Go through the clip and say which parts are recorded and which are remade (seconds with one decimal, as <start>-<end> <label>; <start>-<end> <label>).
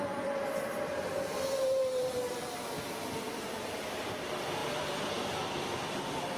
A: 0.0-6.4 remade